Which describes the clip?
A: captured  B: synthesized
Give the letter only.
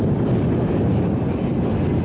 A